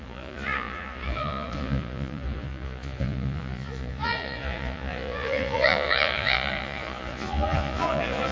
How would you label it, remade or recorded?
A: remade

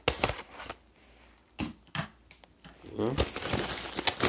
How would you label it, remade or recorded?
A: recorded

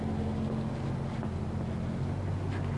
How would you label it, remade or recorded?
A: recorded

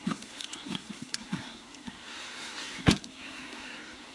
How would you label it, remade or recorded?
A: remade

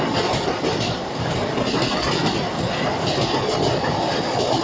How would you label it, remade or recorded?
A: recorded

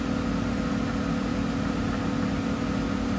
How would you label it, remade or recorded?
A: recorded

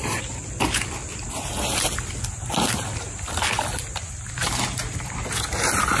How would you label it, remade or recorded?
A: recorded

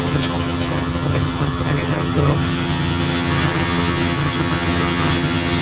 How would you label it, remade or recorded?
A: remade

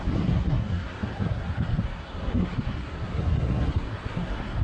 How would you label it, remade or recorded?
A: remade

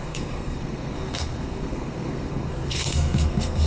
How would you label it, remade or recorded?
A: remade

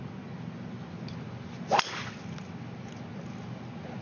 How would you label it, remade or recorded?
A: recorded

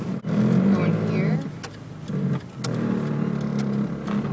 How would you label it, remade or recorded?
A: recorded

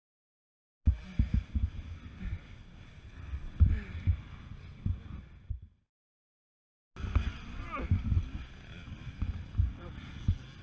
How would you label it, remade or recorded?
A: recorded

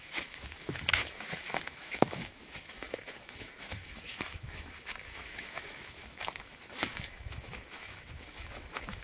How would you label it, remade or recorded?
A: remade